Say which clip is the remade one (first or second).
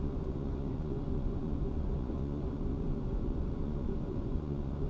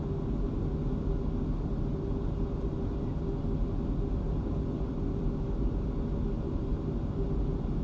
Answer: first